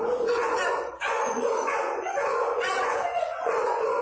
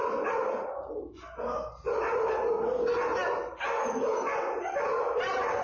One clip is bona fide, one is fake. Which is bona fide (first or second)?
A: second